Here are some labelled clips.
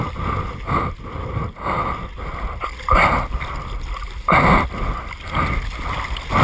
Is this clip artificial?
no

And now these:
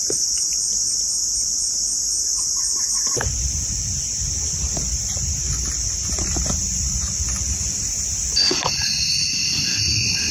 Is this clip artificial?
no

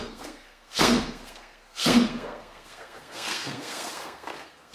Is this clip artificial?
yes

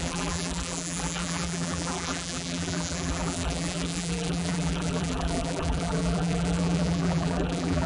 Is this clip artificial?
yes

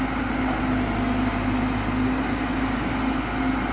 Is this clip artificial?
no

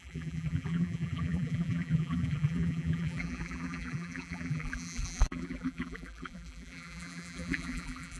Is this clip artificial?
yes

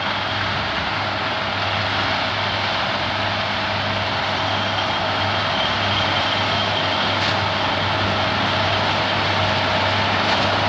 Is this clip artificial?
no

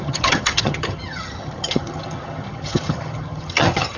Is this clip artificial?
yes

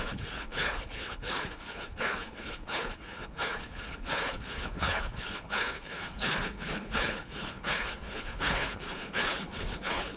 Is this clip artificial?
yes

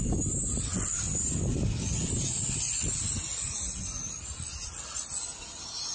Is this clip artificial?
no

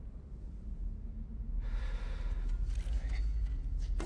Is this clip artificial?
no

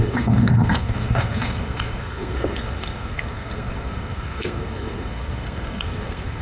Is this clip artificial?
yes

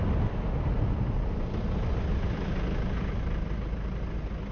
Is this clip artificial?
no